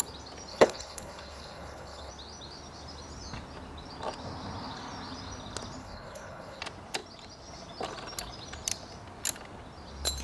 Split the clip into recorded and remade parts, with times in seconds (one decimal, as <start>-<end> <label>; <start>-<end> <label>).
0.0-0.5 recorded; 0.5-2.1 remade; 2.1-5.8 recorded; 5.8-6.6 remade; 6.6-10.2 recorded